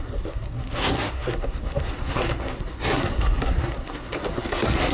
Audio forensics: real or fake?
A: fake